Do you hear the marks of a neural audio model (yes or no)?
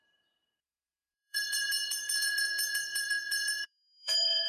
yes